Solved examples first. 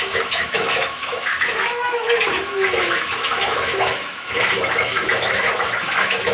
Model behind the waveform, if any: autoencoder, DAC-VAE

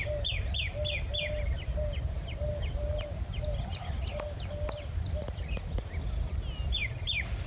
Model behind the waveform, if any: none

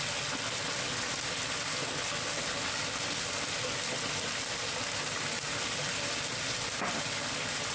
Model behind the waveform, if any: none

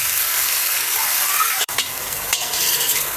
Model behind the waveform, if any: codec, SNAC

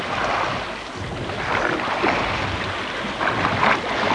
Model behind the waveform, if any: none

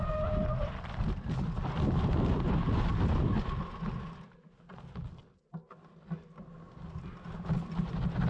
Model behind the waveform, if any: none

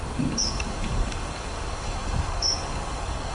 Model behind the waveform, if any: codec, DAC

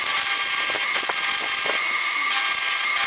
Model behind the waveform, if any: none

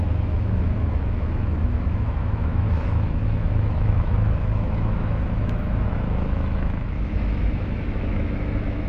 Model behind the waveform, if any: autoencoder, DAC-VAE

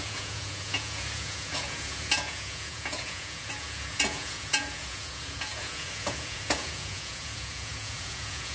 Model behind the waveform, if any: vocoder, Vocos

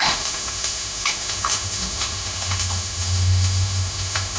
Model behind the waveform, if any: autoencoder, DAC-VAE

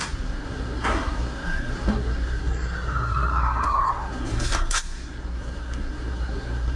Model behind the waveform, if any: codec, SNAC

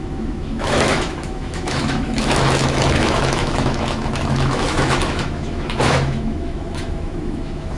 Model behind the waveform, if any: autoencoder, DAC-VAE